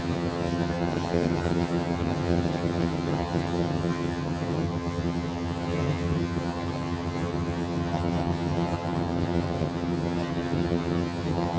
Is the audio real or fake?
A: fake